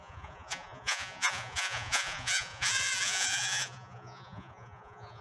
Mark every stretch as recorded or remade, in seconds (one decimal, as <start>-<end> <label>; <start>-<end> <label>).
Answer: 0.0-5.2 remade